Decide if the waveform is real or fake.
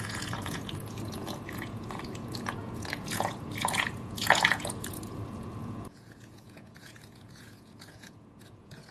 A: fake